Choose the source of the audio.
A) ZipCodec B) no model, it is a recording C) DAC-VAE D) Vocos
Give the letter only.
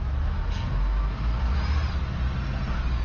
B